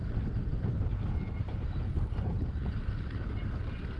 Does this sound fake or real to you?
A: real